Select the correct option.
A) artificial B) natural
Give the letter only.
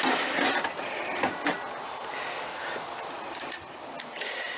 B